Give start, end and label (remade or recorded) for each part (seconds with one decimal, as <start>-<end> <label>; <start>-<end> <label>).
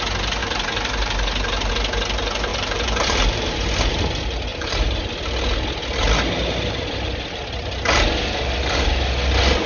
0.0-0.4 recorded; 0.4-1.7 remade; 1.7-2.5 recorded; 2.5-4.0 remade; 4.0-4.5 recorded; 4.5-5.1 remade; 5.1-9.7 recorded